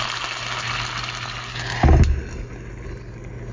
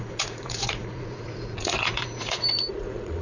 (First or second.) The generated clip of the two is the second